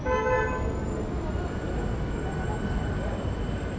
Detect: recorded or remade recorded